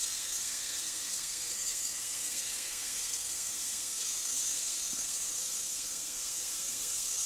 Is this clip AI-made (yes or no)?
yes